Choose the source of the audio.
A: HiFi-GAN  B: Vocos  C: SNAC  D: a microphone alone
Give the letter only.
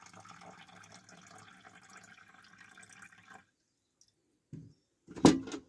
D